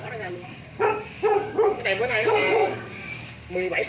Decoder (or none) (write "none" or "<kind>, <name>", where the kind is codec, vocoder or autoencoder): codec, DAC